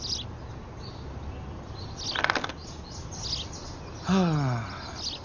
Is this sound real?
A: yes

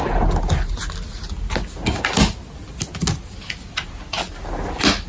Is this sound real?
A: yes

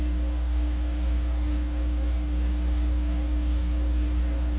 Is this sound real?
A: no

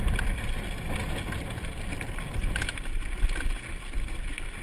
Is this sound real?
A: yes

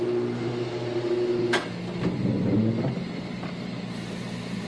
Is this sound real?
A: yes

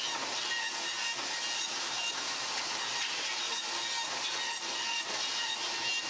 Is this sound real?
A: yes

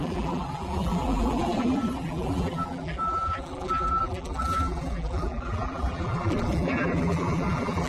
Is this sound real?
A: no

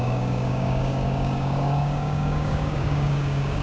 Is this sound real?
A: no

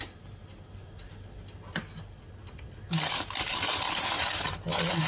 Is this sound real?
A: yes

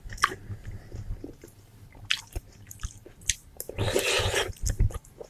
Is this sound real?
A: yes